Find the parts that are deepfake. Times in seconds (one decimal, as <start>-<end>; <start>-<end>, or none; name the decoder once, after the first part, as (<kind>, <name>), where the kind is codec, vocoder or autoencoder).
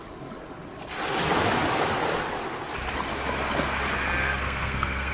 4.2-5.1 (codec, SNAC)